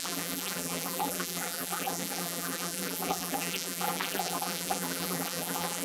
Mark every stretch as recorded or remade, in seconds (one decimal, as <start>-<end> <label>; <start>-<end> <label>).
0.0-5.8 remade